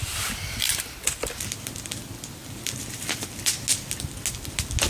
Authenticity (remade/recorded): recorded